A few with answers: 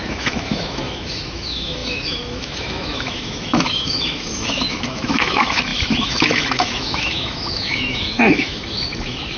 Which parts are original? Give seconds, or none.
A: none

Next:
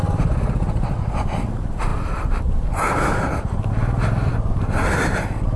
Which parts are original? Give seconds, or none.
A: 0.0-5.6

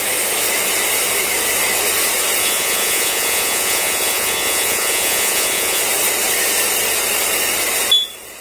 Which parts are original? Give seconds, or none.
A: 0.0-2.4; 5.8-8.4

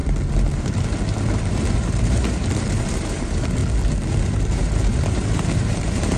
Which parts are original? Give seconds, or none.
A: 0.0-1.5; 3.6-4.4

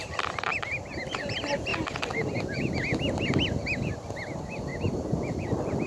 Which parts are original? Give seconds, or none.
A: 0.0-5.9

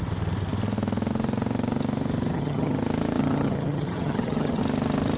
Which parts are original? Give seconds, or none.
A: 0.0-2.3; 2.8-3.2; 4.6-5.2